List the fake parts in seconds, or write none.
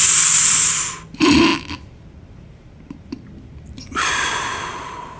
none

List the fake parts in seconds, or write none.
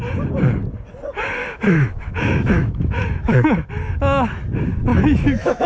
1.4-3.7 (autoencoder, DAC-VAE); 4.9-5.7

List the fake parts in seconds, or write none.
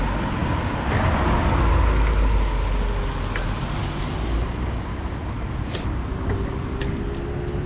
none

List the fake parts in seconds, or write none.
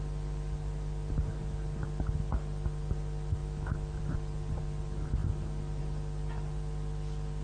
3.4-4.0 (autoencoder, DAC-VAE)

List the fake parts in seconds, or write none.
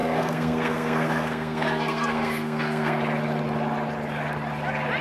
0.0-3.0 (codec, SNAC)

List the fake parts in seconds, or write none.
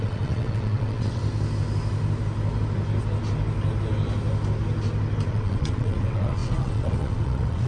0.0-1.2 (vocoder, WaveNeXt); 5.3-7.7